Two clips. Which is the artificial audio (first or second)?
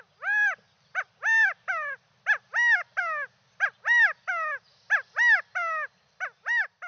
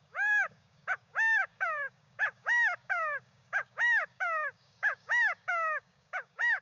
second